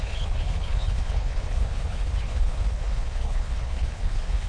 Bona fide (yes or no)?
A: no